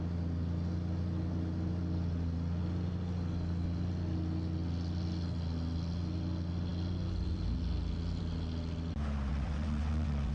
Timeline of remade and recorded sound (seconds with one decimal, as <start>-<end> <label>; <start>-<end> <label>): 0.0-9.3 recorded; 9.3-10.3 remade